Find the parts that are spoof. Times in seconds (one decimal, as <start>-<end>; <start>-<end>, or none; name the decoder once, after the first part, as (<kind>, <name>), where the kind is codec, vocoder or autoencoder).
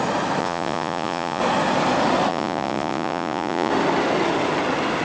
0.4-1.4 (vocoder, Vocos); 2.3-3.7